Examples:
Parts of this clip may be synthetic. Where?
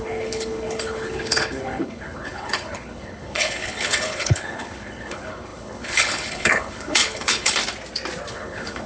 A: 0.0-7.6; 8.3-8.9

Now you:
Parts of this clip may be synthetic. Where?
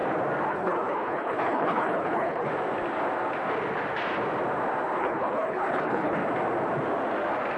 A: 0.5-2.5; 5.0-6.2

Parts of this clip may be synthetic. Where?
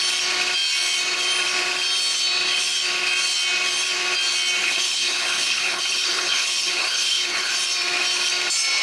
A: 4.6-7.5